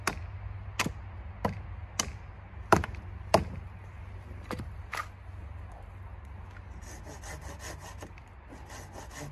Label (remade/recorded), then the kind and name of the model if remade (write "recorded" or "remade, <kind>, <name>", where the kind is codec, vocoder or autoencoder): recorded